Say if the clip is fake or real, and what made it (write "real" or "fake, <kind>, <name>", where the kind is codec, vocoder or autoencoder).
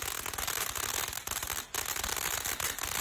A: real